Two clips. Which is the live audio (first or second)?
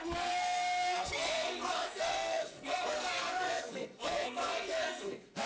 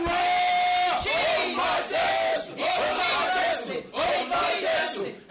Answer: second